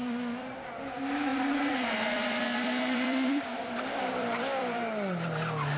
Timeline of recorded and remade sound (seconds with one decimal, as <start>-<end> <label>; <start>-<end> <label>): 0.0-0.7 remade; 0.7-1.3 recorded; 1.3-4.8 remade; 4.8-5.8 recorded